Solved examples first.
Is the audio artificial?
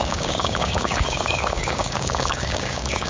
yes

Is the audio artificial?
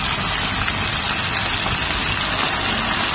no